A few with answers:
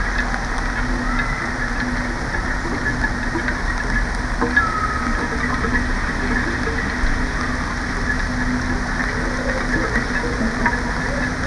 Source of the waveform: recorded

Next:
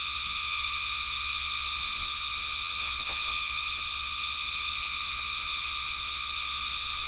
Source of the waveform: remade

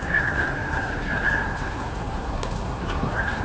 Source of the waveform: remade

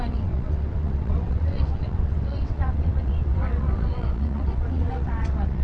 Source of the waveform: remade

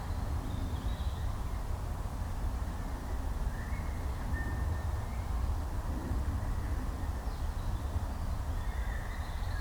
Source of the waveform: recorded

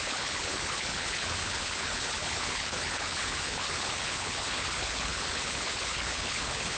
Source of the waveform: remade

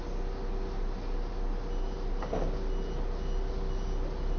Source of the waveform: recorded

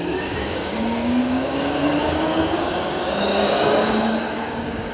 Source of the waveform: remade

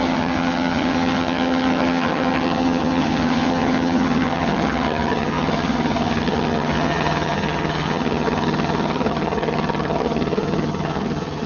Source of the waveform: remade